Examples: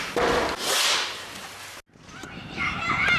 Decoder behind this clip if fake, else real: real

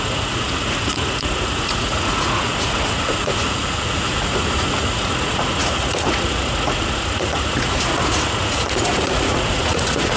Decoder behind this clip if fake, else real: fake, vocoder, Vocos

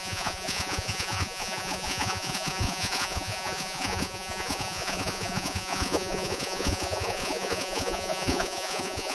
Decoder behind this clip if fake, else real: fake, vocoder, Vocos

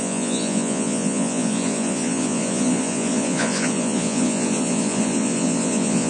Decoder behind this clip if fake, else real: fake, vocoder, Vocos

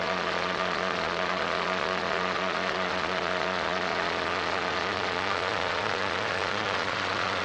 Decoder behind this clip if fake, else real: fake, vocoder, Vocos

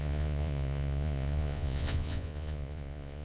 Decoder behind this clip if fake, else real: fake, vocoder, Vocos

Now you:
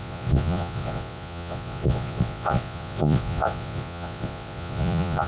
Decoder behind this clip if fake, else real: fake, vocoder, Vocos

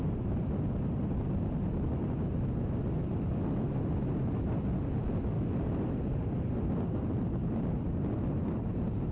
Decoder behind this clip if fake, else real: real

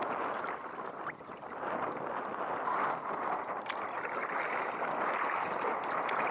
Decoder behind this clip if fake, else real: real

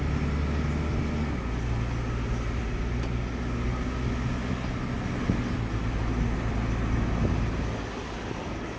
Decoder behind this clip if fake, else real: real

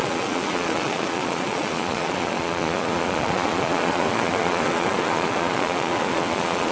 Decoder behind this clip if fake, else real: fake, vocoder, Vocos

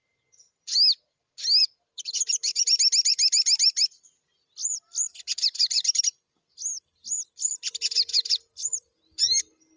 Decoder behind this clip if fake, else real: real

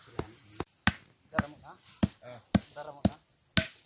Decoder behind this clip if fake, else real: real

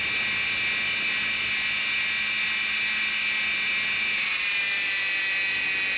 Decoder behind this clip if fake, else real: real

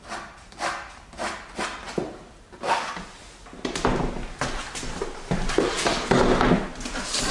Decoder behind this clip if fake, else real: real